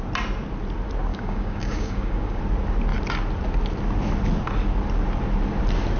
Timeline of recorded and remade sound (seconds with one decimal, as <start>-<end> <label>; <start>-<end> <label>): 0.0-1.1 recorded; 1.1-2.4 remade; 2.4-6.0 recorded